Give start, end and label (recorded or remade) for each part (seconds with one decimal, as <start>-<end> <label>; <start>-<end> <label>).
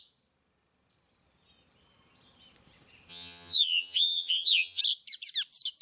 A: 0.0-3.1 recorded; 3.1-4.8 remade; 4.8-5.8 recorded